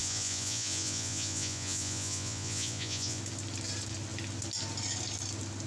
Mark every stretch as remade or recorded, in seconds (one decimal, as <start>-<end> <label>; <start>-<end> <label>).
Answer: 0.0-3.2 remade; 3.2-5.7 recorded